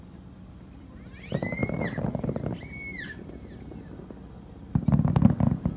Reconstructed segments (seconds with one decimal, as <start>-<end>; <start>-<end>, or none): none